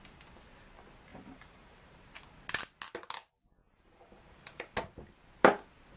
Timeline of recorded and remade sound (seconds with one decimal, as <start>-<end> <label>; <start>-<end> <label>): 0.0-1.1 recorded; 1.1-2.0 remade; 2.0-3.6 recorded; 3.6-4.7 remade; 4.7-6.0 recorded